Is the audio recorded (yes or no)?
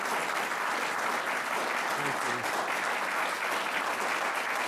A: yes